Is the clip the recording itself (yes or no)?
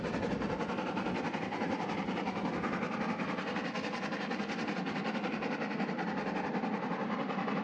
yes